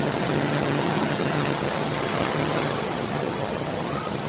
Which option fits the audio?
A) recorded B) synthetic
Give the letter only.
B